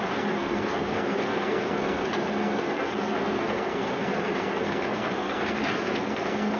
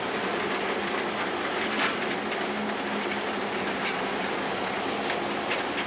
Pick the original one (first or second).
second